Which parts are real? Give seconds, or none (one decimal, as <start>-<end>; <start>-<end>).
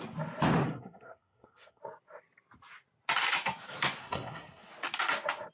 0.0-0.7; 1.8-4.0; 4.7-5.5